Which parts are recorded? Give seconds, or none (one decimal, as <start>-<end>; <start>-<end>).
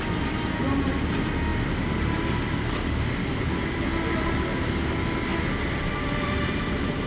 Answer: 0.0-1.5; 3.4-5.3; 5.9-7.1